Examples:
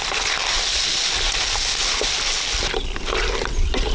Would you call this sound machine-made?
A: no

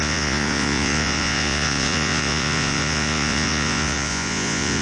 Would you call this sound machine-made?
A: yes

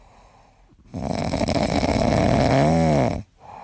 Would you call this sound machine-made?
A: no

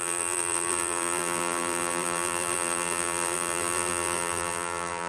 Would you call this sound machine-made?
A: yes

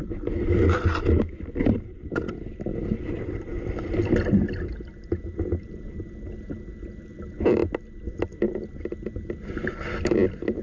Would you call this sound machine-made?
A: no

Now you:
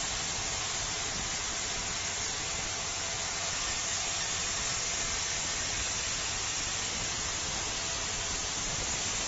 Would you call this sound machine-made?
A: no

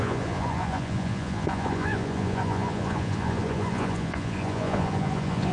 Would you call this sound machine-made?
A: yes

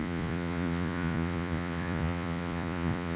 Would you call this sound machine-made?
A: yes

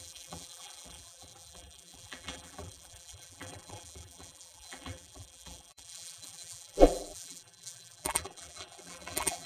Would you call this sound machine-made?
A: yes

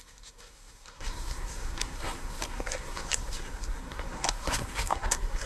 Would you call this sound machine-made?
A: yes